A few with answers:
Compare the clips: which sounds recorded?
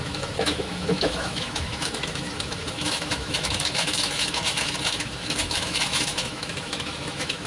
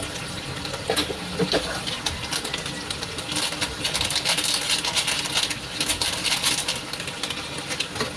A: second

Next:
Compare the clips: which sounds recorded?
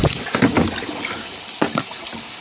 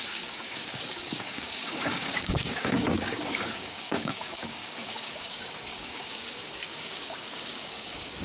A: first